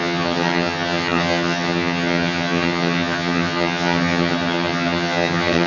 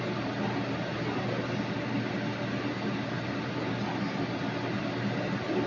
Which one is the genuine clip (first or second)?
second